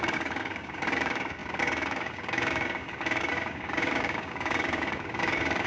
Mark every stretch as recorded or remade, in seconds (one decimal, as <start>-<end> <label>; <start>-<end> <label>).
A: 0.0-5.7 remade